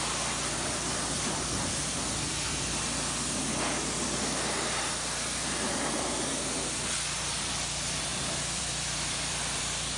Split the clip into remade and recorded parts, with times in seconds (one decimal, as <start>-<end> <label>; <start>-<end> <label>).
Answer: 0.0-8.1 recorded; 8.1-9.6 remade; 9.6-10.0 recorded